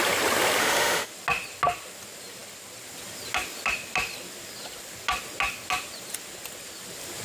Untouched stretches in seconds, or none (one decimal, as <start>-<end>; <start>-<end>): 0.0-0.6; 1.1-7.2